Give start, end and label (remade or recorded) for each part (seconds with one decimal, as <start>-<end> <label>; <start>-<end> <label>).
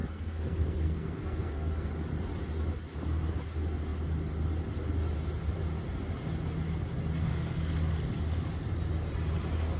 0.0-1.9 remade; 1.9-7.2 recorded; 7.2-7.7 remade; 7.7-9.8 recorded